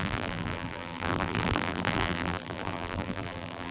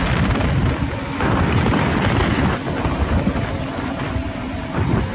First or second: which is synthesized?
first